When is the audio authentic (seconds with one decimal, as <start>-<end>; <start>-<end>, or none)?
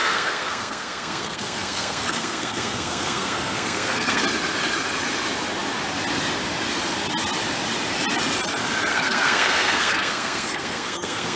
4.2-8.9